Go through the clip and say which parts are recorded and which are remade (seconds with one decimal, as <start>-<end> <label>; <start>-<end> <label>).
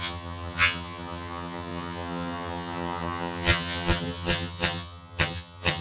0.0-5.8 remade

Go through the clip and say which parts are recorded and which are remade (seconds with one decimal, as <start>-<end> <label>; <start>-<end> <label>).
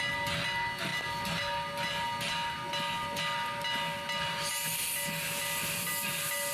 0.0-6.5 recorded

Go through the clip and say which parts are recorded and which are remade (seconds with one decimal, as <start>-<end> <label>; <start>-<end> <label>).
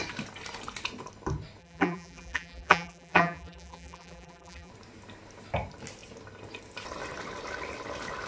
0.0-1.6 recorded; 1.6-4.7 remade; 4.7-8.3 recorded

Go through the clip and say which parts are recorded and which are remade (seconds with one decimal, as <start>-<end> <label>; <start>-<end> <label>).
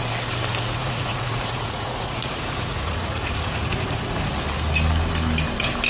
0.0-0.8 recorded; 0.8-4.3 remade; 4.3-5.9 recorded